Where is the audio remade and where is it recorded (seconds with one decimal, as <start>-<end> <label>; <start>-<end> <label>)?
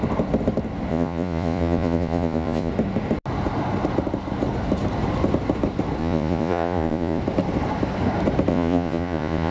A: 0.0-0.9 recorded; 0.9-2.7 remade; 2.7-6.0 recorded; 6.0-7.2 remade; 7.2-8.5 recorded; 8.5-9.5 remade